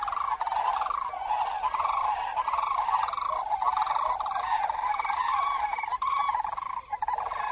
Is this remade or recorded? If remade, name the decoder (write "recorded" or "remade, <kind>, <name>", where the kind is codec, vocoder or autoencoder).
recorded